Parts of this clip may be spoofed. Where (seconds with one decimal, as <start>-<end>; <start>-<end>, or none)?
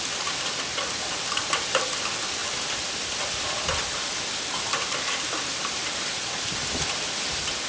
0.7-1.6; 2.4-6.1